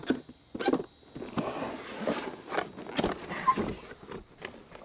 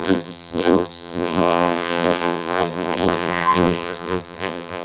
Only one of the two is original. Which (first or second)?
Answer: first